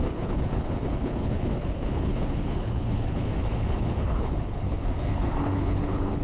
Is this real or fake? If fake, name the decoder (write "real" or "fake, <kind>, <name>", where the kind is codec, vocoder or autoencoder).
fake, codec, HILCodec